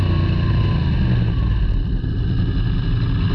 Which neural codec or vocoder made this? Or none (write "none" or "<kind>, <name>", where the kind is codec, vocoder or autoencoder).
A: none